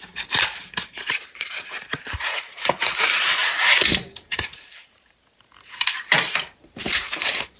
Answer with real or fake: fake